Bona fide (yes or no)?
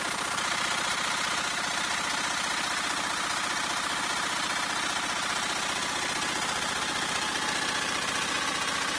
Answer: yes